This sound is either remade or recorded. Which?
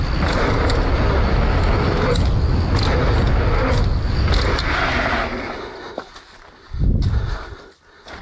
recorded